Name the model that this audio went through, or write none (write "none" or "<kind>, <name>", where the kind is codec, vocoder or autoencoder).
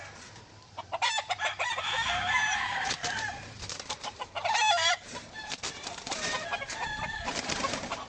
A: vocoder, BigVGAN v2